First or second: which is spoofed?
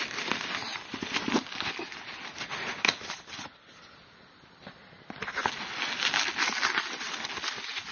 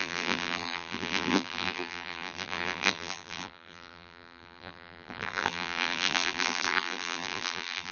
second